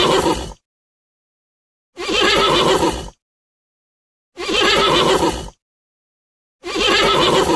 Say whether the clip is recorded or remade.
recorded